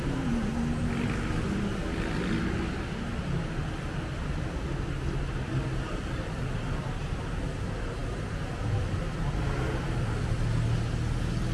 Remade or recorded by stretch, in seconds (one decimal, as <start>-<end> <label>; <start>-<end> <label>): 0.0-11.5 recorded